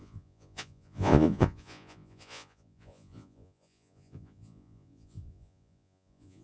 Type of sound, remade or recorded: remade